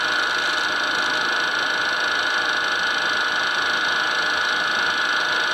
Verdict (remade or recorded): recorded